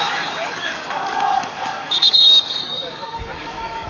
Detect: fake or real fake